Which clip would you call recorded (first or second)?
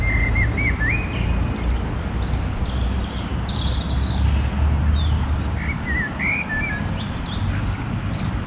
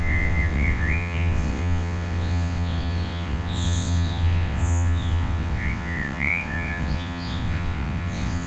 first